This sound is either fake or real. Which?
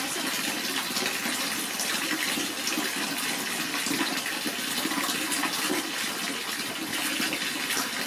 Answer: real